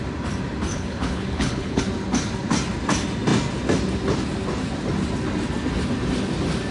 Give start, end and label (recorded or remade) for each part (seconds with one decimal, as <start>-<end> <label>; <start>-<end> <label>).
0.0-0.7 recorded; 0.7-1.8 remade; 1.8-6.7 recorded